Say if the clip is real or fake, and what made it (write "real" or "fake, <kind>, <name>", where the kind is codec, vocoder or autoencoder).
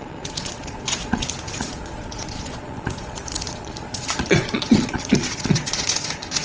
fake, vocoder, Vocos